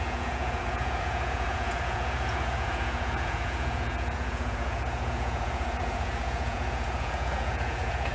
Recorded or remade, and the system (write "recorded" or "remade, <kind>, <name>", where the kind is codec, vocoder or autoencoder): remade, vocoder, Vocos